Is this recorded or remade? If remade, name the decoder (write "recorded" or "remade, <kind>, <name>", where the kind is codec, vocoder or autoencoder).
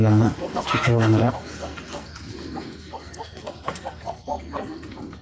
remade, codec, SNAC